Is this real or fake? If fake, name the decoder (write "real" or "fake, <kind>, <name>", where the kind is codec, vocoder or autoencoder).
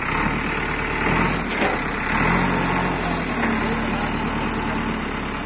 real